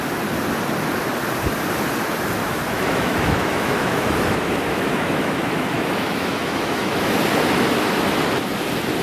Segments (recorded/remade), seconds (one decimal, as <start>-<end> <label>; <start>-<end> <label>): 0.0-2.4 recorded; 2.4-7.2 remade; 7.2-9.0 recorded